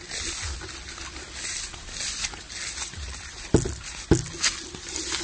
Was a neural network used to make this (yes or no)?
no